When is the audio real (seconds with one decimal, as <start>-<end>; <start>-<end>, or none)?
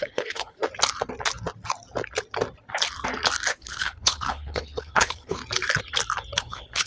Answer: 0.6-3.5; 5.4-6.4